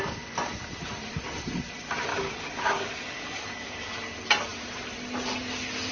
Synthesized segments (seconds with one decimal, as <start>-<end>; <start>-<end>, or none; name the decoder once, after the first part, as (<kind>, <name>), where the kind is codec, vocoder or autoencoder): 2.1-3.9 (codec, DAC)